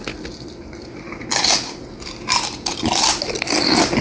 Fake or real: real